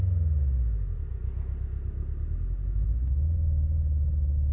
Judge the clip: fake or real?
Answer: real